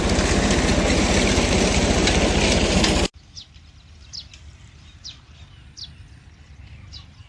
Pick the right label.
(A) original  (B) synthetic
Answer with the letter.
A